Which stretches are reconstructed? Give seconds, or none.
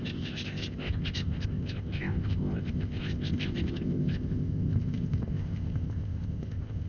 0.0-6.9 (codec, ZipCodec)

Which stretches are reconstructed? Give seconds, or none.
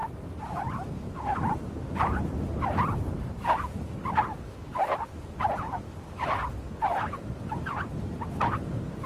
none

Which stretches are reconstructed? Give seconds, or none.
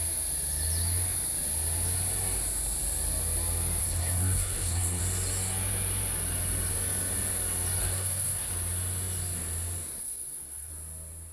3.8-5.0 (codec, SNAC); 7.8-8.5; 10.0-10.7